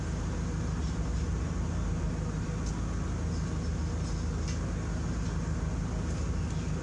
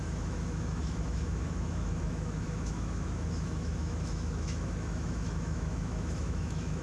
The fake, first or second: second